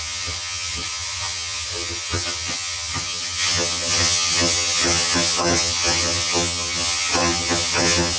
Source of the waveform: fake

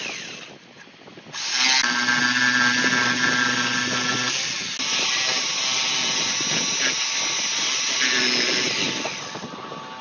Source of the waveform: real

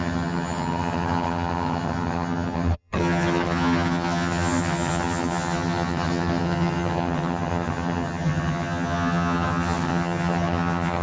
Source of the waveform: fake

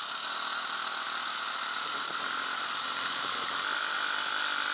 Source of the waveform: real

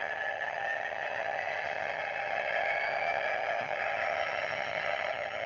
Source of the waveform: fake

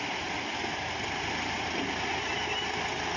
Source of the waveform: real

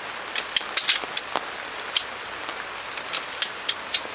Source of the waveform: real